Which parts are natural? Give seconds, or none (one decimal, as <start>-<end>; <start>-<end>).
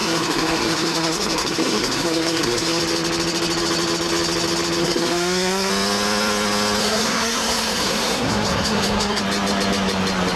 2.8-4.8; 5.7-6.8; 9.2-10.4